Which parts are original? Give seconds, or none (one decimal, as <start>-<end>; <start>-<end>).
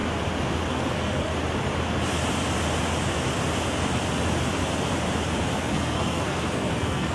0.0-0.7; 1.3-5.6